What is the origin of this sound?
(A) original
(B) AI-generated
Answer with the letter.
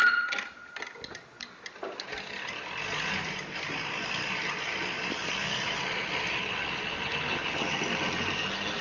A